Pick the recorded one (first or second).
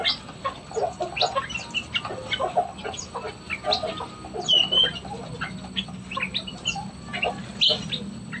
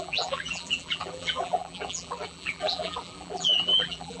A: first